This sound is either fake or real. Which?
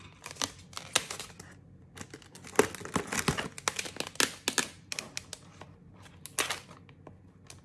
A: real